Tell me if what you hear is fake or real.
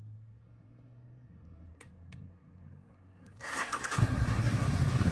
fake